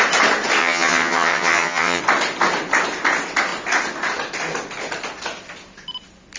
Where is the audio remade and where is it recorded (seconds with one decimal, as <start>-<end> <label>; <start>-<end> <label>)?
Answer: 0.0-0.6 recorded; 0.6-2.0 remade; 2.0-6.4 recorded